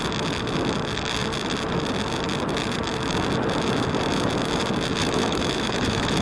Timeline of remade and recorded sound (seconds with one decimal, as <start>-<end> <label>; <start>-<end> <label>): 0.0-5.0 recorded; 5.0-6.2 remade